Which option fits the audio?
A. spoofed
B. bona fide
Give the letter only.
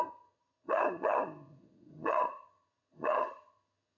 A